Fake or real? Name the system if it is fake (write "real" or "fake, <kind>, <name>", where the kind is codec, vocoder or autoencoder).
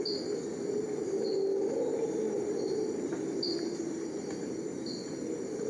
real